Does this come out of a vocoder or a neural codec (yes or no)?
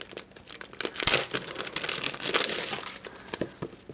no